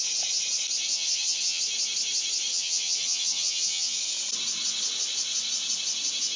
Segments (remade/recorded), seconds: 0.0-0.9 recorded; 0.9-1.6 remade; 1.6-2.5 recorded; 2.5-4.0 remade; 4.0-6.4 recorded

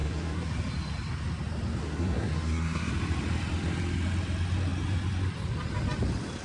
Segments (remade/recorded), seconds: 0.0-0.5 remade; 0.5-1.8 recorded; 1.8-2.9 remade; 2.9-6.4 recorded

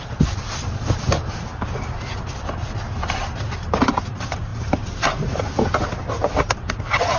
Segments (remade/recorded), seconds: 0.0-7.2 recorded

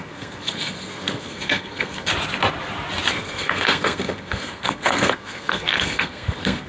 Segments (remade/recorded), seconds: 0.0-2.1 remade; 2.1-3.1 recorded; 3.1-6.7 remade

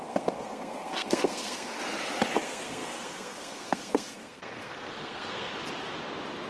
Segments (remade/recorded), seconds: 0.0-1.8 remade; 1.8-2.4 recorded; 2.4-5.5 remade; 5.5-6.5 recorded

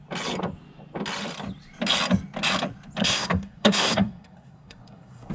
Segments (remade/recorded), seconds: 0.0-3.0 recorded; 3.0-5.3 remade